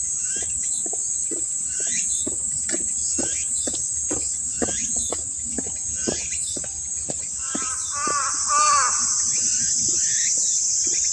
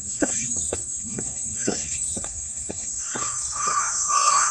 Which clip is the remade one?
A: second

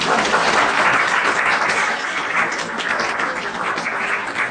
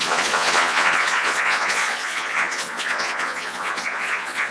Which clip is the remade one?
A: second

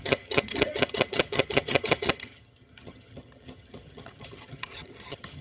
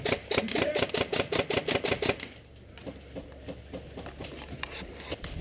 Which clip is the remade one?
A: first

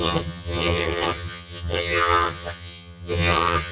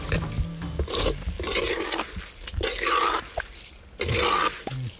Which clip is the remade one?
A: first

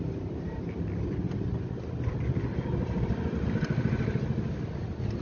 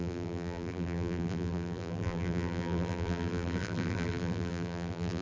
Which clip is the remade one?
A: second